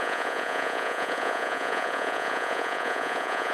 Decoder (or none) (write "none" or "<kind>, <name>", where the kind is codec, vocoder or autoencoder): vocoder, Vocos